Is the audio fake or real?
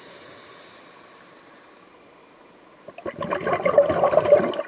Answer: real